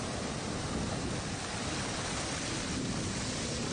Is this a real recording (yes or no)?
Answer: yes